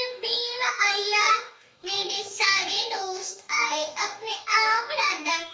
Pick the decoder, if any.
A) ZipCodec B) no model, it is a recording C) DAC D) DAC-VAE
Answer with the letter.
C